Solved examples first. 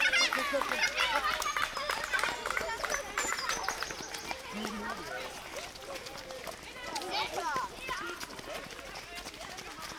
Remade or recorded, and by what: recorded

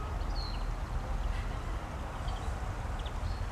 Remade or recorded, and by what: recorded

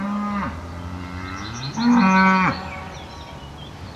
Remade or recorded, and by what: recorded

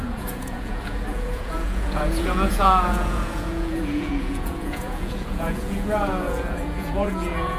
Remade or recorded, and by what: remade, vocoder, Vocos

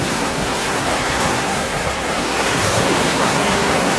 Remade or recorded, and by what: remade, codec, SNAC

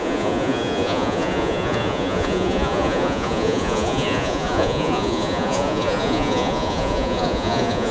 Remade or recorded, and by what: remade, vocoder, Vocos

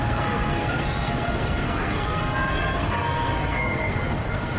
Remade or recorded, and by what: remade, codec, SNAC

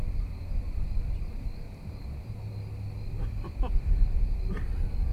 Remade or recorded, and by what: recorded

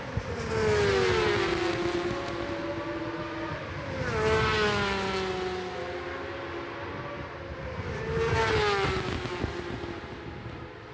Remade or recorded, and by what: recorded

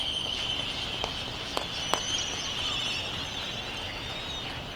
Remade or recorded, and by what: recorded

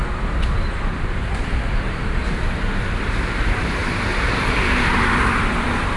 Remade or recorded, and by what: remade, vocoder, BigVGAN v2